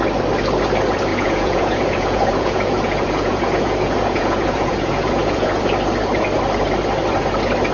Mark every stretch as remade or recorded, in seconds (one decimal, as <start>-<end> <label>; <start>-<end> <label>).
0.0-1.1 recorded; 1.1-5.7 remade; 5.7-7.7 recorded